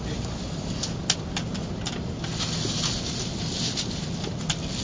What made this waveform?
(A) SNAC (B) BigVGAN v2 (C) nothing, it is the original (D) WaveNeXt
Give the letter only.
C